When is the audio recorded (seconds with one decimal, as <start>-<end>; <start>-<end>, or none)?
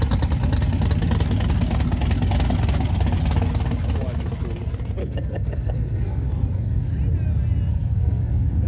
0.0-5.0; 6.9-7.7